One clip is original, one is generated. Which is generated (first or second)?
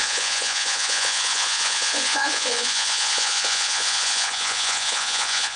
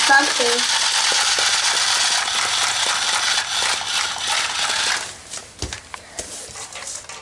first